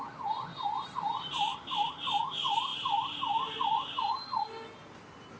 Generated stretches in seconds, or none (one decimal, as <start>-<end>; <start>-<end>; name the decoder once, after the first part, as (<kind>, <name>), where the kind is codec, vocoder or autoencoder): 0.5-1.9 (vocoder, BigVGAN v2); 2.7-4.1